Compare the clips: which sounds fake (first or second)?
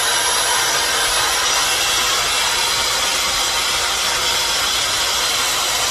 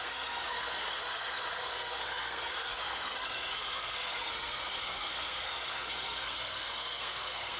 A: second